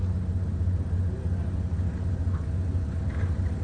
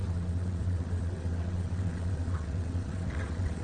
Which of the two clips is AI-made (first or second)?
second